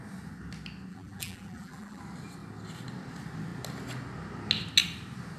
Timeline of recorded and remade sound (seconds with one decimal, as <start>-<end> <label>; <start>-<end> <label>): 0.0-0.9 recorded; 0.9-2.0 remade; 2.0-5.4 recorded